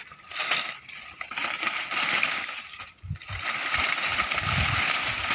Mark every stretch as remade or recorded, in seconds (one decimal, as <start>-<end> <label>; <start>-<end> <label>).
0.0-5.3 recorded